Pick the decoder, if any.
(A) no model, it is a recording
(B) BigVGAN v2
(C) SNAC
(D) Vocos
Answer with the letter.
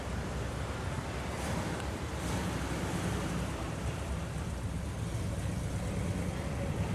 B